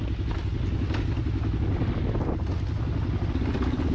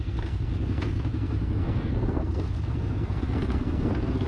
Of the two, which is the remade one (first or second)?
second